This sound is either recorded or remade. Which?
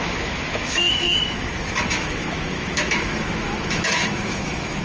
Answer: remade